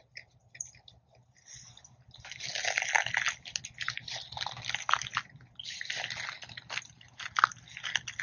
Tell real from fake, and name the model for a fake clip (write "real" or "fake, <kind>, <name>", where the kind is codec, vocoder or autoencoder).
real